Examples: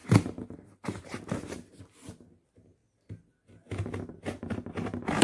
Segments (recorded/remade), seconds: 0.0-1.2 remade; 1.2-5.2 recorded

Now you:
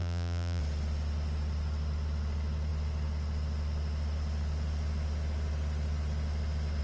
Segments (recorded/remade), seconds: 0.0-0.6 remade; 0.6-6.8 recorded

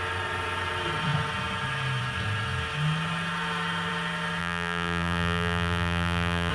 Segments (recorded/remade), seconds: 0.0-4.4 recorded; 4.4-6.5 remade

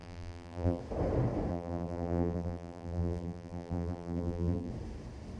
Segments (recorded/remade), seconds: 0.0-0.8 remade; 0.8-1.5 recorded; 1.5-4.7 remade; 4.7-5.4 recorded

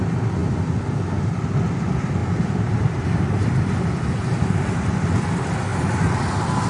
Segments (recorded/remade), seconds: 0.0-6.7 recorded

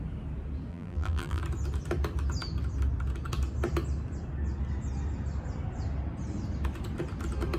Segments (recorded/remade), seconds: 0.0-0.7 recorded; 0.7-1.4 remade; 1.4-7.6 recorded

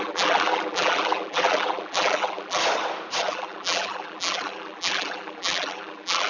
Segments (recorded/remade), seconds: 0.0-2.6 remade; 2.6-3.2 recorded; 3.2-6.3 remade